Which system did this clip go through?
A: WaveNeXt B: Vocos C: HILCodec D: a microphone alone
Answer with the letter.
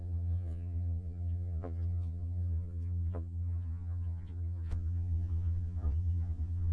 B